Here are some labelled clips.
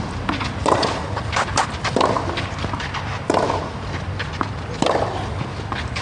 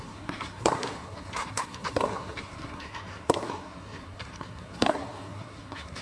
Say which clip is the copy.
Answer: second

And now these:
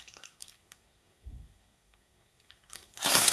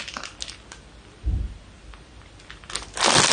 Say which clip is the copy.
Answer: first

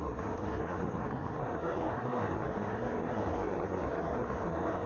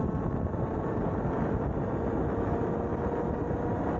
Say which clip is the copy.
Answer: first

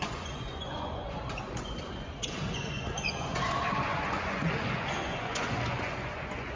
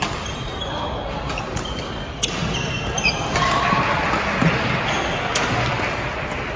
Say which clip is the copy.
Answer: first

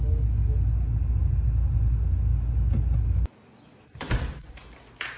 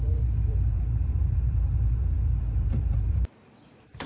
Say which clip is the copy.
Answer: second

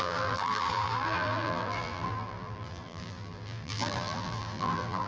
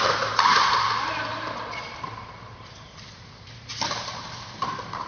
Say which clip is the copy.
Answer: first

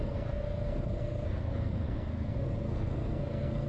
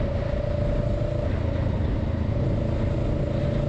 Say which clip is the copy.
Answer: first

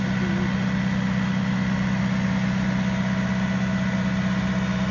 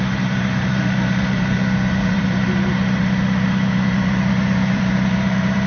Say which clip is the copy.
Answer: second